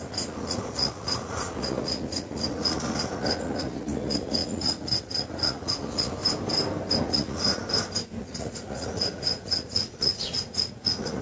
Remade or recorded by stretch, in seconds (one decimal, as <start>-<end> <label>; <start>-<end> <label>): 0.0-6.2 remade; 6.2-7.0 recorded; 7.0-7.6 remade; 7.6-8.2 recorded; 8.2-11.2 remade